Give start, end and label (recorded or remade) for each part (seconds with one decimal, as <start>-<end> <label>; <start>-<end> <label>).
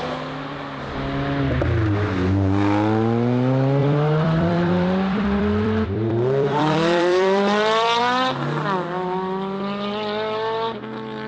0.0-3.8 recorded; 3.8-8.0 remade; 8.0-11.3 recorded